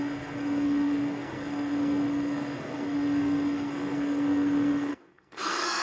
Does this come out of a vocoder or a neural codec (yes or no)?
yes